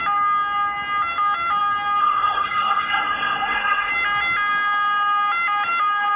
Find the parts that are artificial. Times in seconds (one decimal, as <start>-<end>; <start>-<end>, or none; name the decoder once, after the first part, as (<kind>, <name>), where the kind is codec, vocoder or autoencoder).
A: 2.0-3.9 (codec, SNAC)